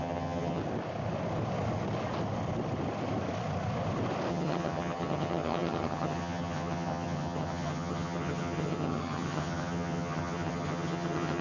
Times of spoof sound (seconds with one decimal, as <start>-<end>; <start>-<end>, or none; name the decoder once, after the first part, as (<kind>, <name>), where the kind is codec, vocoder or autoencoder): 0.0-0.6 (vocoder, HiFi-GAN); 4.3-11.4